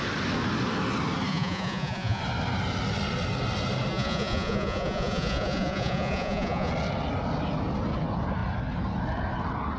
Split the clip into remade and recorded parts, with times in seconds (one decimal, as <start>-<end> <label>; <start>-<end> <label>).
0.0-1.3 recorded; 1.3-2.2 remade; 2.2-3.9 recorded; 3.9-6.7 remade; 6.7-9.8 recorded